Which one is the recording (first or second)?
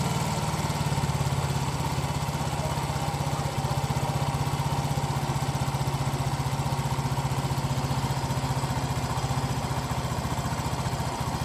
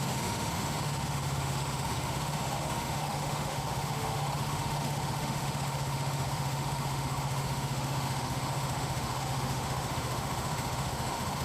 first